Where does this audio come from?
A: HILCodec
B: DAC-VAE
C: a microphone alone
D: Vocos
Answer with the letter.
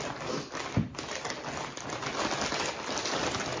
C